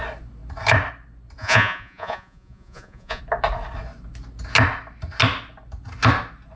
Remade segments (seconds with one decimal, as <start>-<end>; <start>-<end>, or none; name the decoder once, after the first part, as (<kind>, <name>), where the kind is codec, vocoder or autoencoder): 1.4-3.2 (vocoder, Vocos)